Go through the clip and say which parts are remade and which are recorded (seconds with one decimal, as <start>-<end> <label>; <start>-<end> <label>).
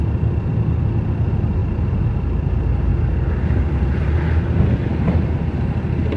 0.0-1.6 recorded; 1.6-2.5 remade; 2.5-4.9 recorded; 4.9-5.8 remade; 5.8-6.2 recorded